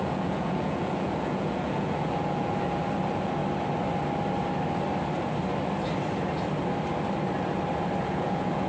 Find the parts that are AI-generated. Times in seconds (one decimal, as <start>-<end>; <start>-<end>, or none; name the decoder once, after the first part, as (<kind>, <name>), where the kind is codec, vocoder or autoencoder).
0.0-3.4 (vocoder, Vocos); 8.0-8.7